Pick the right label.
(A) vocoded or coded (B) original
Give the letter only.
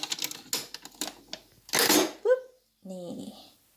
B